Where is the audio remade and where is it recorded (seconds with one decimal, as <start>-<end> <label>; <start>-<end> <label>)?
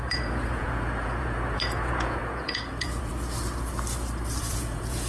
0.0-3.1 remade; 3.1-4.4 recorded; 4.4-5.1 remade